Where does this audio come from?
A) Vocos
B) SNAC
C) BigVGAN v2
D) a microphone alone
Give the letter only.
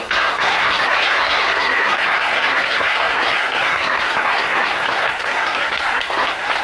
B